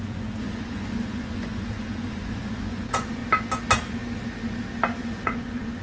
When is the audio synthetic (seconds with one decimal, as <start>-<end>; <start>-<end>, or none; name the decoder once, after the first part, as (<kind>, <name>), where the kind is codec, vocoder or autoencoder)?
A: 0.0-3.2 (vocoder, Vocos); 5.0-5.8